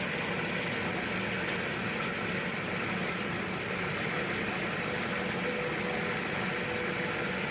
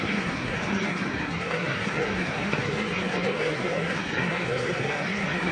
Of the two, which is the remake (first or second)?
second